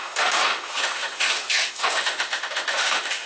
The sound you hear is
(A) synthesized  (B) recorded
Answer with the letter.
A